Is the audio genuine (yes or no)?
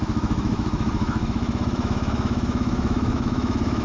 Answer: no